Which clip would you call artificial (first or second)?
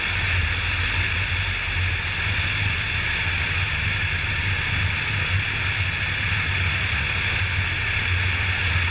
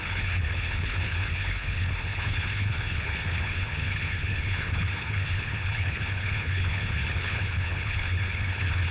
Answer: second